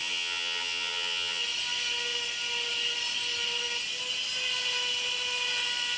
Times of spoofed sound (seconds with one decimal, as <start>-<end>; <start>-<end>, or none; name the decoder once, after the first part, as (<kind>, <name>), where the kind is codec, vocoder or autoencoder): 0.0-1.4 (vocoder, HiFi-GAN)